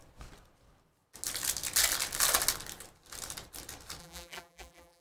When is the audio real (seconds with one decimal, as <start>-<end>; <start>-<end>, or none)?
0.0-4.0